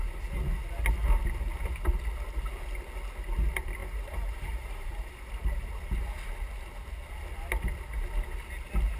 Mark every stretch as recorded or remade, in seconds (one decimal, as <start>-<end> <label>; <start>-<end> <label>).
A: 0.0-3.8 recorded; 3.8-5.1 remade; 5.1-9.0 recorded